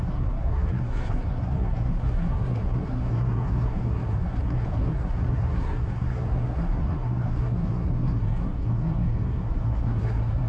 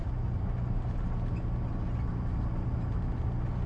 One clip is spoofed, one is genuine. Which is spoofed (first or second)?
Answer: first